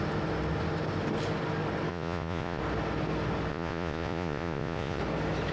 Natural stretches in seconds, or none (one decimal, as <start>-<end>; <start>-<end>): 0.0-1.9; 2.6-3.5; 5.0-5.5